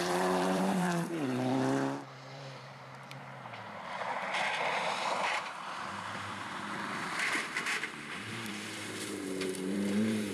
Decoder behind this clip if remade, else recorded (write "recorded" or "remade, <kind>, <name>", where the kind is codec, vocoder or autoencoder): remade, vocoder, BigVGAN v2